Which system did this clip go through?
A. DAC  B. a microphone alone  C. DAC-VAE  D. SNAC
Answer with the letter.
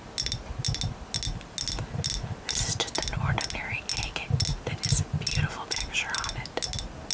B